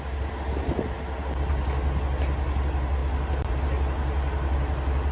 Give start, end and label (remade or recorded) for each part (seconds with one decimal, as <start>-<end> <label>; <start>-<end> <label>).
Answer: 0.0-5.1 recorded